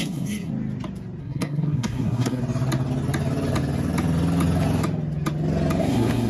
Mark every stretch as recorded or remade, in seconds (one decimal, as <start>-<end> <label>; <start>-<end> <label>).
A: 0.0-0.5 remade; 0.5-1.2 recorded; 1.2-2.4 remade; 2.4-5.8 recorded; 5.8-6.3 remade